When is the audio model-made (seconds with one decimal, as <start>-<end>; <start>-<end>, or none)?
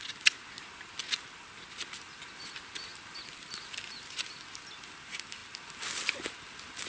none